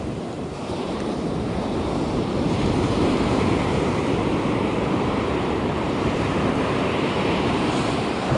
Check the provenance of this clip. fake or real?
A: fake